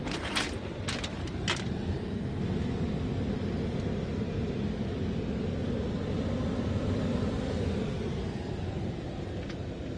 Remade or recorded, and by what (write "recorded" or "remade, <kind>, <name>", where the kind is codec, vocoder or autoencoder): recorded